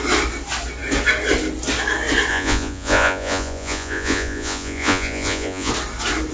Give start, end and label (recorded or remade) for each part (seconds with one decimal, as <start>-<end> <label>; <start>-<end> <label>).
0.0-2.3 recorded; 2.3-5.7 remade; 5.7-6.3 recorded